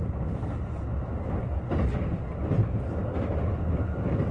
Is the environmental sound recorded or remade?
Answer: recorded